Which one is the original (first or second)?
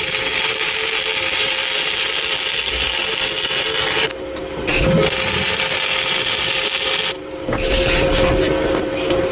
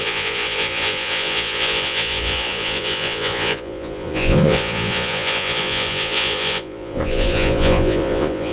first